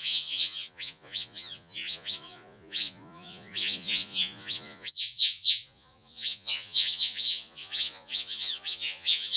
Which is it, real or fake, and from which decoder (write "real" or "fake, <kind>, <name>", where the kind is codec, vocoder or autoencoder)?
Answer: fake, vocoder, Vocos